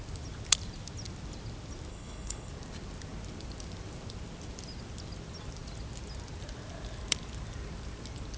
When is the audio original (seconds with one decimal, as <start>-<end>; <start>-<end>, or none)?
0.0-1.9; 2.5-8.4